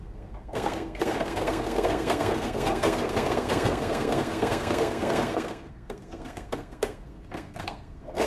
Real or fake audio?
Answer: fake